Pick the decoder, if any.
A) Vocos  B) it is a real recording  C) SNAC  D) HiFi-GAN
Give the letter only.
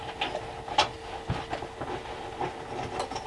B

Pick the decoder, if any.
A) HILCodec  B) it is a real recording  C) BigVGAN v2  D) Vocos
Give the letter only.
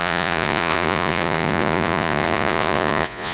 D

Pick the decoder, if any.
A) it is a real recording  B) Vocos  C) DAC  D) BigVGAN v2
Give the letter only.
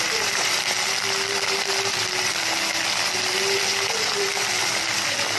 D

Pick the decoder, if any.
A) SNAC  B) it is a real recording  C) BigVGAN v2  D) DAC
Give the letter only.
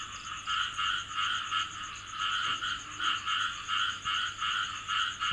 B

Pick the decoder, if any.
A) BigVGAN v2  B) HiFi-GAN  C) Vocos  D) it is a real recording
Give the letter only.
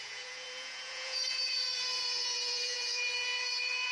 C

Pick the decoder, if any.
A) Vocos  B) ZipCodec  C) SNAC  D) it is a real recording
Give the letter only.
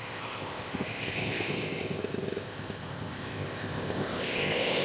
B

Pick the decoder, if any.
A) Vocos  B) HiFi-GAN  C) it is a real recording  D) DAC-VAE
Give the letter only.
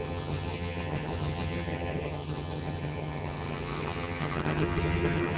B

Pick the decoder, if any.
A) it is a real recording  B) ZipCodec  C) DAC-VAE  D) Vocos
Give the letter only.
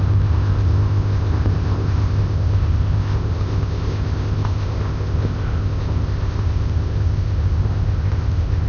B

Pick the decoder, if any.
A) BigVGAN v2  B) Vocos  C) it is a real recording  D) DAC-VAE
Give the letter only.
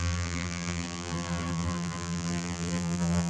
A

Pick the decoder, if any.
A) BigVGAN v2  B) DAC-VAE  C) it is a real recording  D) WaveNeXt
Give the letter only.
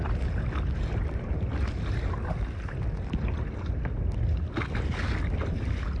C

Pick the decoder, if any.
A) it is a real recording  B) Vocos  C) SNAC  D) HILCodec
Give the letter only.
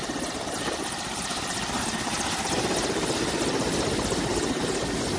A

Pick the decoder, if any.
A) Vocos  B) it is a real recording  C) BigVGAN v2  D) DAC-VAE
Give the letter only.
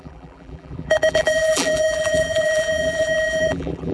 C